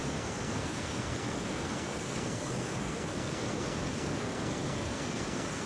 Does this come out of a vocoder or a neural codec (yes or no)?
yes